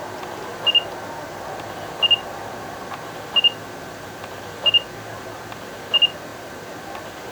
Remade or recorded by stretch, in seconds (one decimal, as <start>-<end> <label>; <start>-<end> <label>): 0.0-7.3 recorded